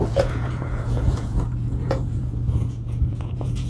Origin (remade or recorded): remade